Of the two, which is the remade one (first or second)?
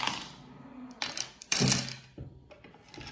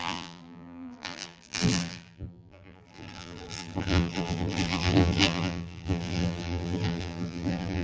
second